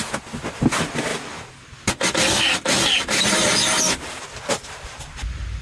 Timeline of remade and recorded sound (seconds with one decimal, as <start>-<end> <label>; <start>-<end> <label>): 0.0-5.6 recorded